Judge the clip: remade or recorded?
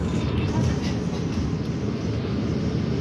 recorded